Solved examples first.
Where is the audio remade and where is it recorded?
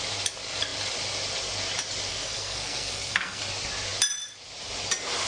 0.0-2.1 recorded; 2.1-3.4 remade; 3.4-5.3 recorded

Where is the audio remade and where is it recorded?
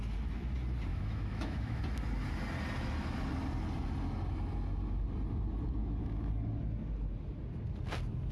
0.0-0.9 recorded; 0.9-1.8 remade; 1.8-5.8 recorded; 5.8-6.3 remade; 6.3-8.3 recorded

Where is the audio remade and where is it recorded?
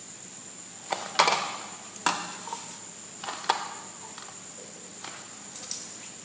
0.0-0.4 remade; 0.4-4.0 recorded; 4.0-6.2 remade